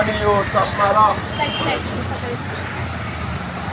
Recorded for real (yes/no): yes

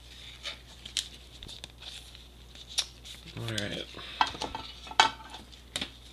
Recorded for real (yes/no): yes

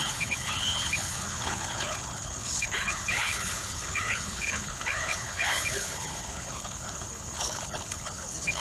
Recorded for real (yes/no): no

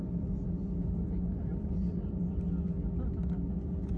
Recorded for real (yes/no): yes